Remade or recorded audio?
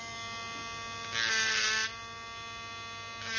recorded